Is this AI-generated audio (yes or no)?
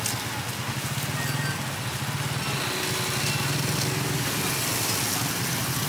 no